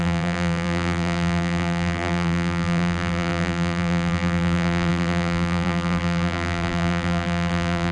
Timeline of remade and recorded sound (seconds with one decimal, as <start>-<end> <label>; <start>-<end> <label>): 0.0-7.9 remade